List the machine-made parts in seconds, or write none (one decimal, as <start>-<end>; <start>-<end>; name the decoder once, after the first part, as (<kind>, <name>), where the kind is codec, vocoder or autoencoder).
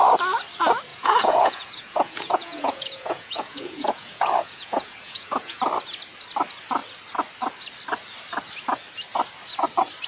0.9-5.6 (vocoder, Vocos)